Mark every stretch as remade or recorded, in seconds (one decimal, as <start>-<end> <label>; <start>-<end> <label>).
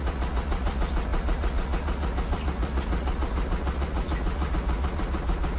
0.0-5.6 remade